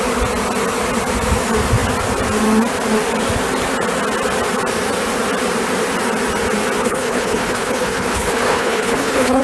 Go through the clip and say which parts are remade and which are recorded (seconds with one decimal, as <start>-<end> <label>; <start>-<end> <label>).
0.0-6.8 recorded; 6.8-9.4 remade